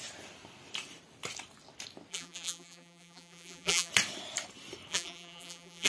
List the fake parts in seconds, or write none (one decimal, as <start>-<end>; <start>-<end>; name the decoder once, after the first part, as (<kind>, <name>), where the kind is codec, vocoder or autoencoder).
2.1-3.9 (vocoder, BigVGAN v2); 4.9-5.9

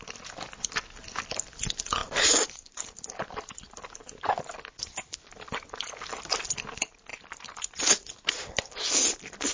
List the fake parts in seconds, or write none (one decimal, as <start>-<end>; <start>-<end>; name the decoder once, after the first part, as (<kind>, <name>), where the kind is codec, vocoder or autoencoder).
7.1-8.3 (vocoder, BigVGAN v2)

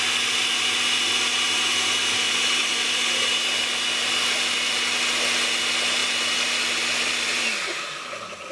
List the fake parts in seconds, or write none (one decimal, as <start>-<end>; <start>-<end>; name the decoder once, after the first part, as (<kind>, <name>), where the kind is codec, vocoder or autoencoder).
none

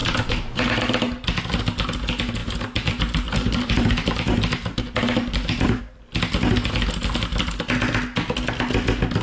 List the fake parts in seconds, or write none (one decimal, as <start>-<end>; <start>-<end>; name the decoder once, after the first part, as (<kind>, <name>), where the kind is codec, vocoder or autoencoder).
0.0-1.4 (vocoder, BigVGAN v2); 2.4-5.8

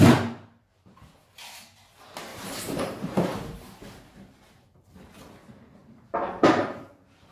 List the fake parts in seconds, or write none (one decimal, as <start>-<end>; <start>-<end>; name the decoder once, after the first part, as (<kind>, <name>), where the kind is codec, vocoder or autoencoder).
2.3-3.8 (vocoder, BigVGAN v2); 5.8-7.3

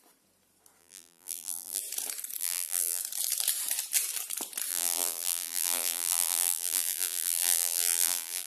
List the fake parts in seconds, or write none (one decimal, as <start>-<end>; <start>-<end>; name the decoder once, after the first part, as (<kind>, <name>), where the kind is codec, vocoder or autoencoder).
0.8-1.8 (vocoder, BigVGAN v2); 2.4-3.0; 4.7-8.5